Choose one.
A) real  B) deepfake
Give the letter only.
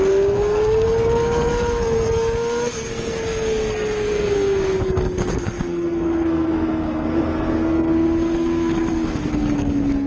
B